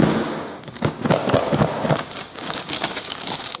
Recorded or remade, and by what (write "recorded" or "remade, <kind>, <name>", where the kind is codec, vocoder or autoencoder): remade, codec, DAC